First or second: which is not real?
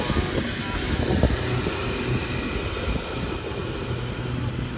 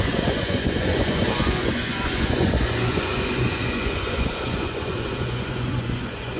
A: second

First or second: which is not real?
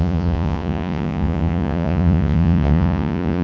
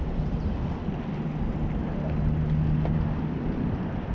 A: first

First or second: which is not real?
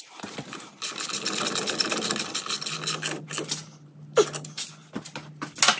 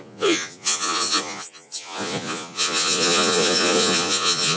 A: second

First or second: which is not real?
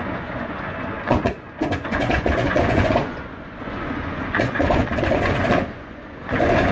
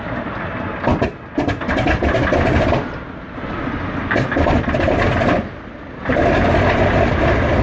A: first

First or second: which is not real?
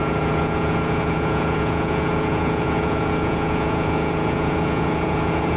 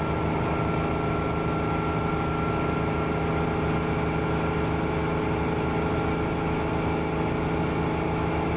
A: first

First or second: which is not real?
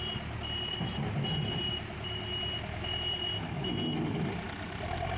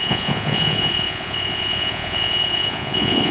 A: second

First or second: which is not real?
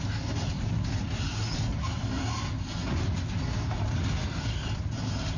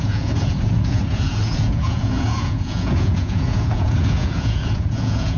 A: second